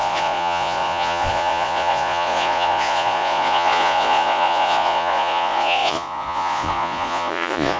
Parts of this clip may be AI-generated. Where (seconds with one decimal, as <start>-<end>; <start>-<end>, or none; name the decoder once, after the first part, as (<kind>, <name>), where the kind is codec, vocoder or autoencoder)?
0.0-7.8 (vocoder, Vocos)